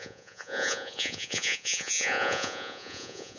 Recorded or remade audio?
remade